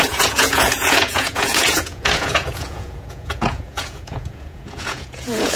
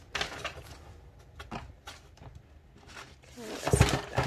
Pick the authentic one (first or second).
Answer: second